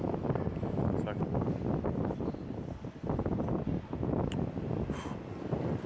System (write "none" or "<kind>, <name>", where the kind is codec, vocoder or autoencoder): none